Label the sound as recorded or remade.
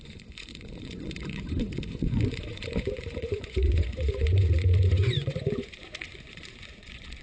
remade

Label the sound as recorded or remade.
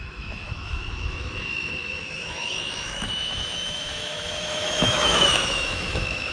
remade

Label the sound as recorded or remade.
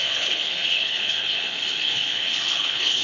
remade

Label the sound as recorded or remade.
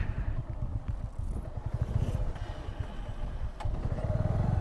remade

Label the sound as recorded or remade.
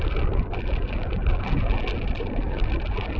recorded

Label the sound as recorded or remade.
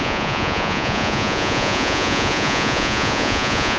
remade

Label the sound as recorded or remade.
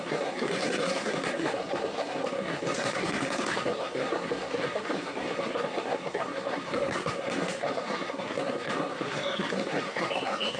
remade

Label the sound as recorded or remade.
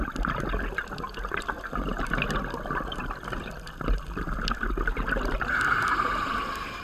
recorded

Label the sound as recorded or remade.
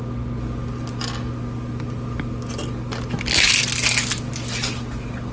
recorded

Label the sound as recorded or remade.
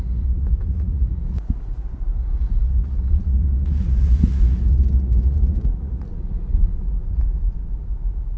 remade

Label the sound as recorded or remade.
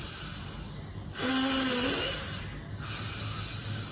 recorded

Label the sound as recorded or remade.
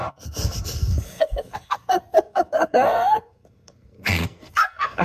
remade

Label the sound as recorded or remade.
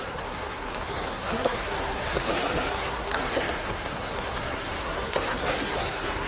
remade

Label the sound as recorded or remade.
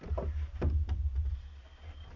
recorded